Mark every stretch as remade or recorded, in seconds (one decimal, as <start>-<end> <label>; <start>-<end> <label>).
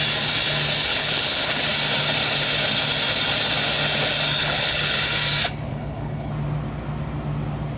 0.0-0.9 recorded; 0.9-1.6 remade; 1.6-4.4 recorded; 4.4-5.0 remade; 5.0-5.7 recorded; 5.7-6.3 remade; 6.3-7.8 recorded